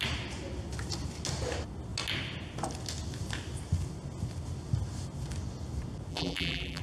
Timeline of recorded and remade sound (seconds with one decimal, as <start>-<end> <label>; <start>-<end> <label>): 0.0-6.1 recorded; 6.1-6.8 remade